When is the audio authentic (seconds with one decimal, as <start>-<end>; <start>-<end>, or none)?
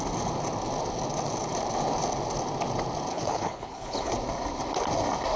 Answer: 0.0-3.1; 4.1-5.4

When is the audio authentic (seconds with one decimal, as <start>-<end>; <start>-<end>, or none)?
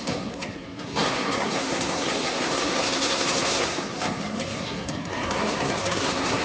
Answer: none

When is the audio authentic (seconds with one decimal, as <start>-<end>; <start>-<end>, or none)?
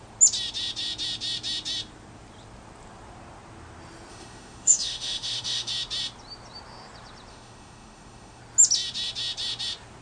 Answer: 0.0-4.1; 5.7-7.3; 8.4-10.0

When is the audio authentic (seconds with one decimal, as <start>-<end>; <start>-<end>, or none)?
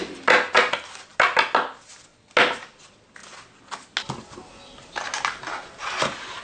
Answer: 0.0-6.4